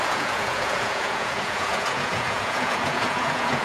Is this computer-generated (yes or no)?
yes